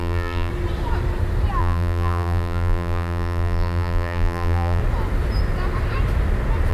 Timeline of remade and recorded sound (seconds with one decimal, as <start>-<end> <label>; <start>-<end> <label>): 0.0-0.5 remade; 0.5-1.6 recorded; 1.6-4.8 remade; 4.8-6.7 recorded